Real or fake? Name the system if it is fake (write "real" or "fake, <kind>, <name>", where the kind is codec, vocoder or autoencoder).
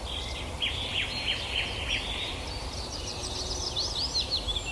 real